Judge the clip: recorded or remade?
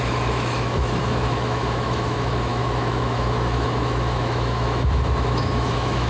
remade